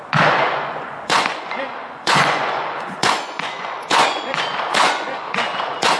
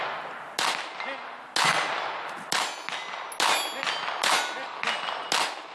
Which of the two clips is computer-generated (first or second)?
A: first